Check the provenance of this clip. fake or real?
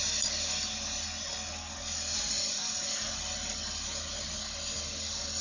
real